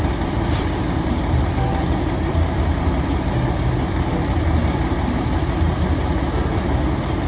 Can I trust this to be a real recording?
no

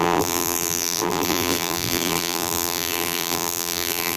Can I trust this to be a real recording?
no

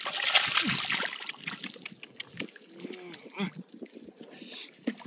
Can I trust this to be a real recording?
yes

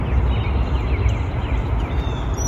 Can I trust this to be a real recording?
yes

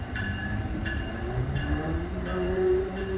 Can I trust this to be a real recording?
no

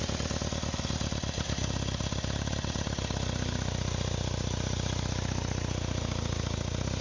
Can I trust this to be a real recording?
yes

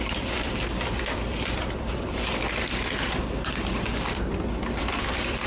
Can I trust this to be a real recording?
no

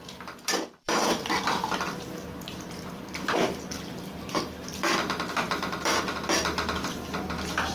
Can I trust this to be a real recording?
no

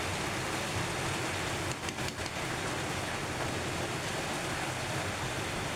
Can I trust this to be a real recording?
yes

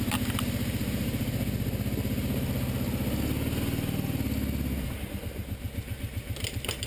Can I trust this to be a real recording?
yes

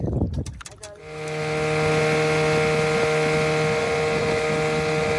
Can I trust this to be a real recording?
yes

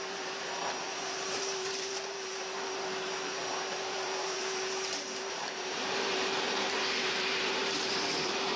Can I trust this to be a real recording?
no